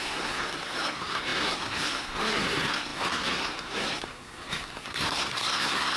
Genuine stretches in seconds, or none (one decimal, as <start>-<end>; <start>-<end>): none